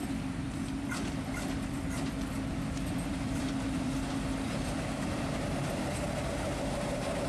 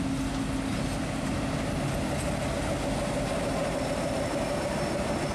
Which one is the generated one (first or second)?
first